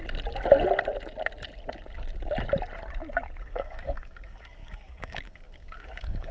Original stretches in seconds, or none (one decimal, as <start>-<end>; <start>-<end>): 0.0-3.4